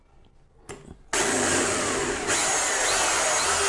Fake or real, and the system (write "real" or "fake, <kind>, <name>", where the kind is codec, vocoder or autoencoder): real